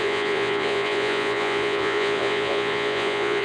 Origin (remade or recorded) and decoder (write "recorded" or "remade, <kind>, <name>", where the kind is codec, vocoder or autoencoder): remade, vocoder, Vocos